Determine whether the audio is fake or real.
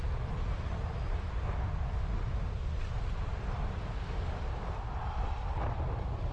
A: real